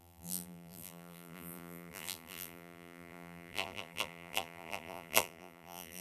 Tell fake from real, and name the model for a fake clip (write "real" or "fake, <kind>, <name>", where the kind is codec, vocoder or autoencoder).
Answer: fake, vocoder, BigVGAN v2